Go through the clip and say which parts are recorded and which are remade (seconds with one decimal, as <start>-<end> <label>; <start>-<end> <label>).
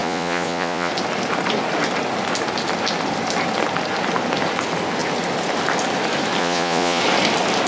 0.0-0.9 remade; 0.9-6.4 recorded; 6.4-7.0 remade; 7.0-7.7 recorded